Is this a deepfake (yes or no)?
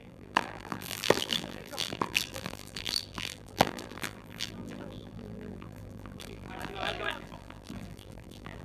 yes